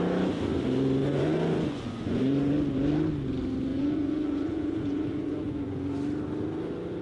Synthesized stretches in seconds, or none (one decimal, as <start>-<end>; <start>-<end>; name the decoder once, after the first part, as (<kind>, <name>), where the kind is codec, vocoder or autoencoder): 1.0-2.5 (vocoder, Vocos); 3.7-5.9